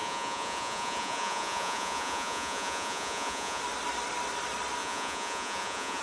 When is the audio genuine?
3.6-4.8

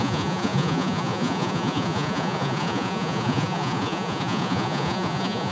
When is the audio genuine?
none

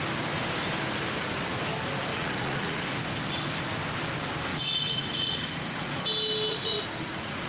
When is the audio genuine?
0.0-2.1; 2.8-4.5; 6.0-6.5

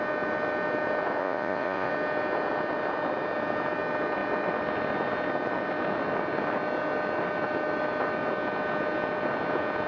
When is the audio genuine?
0.0-1.2; 1.9-9.9